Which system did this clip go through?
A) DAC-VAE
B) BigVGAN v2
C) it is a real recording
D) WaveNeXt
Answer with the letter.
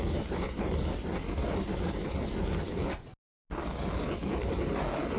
C